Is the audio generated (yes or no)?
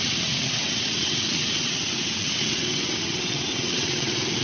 yes